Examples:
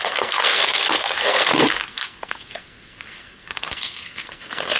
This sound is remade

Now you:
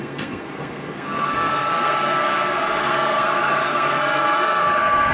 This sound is remade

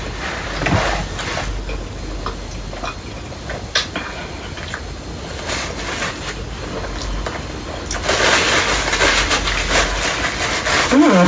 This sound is recorded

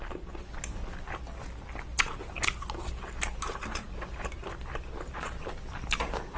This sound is recorded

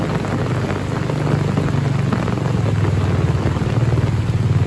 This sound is recorded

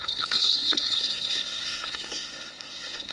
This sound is remade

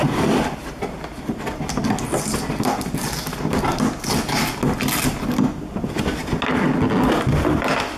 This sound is recorded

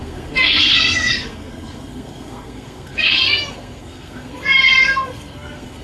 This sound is remade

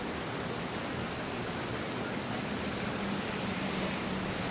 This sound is recorded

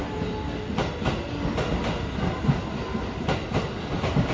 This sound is recorded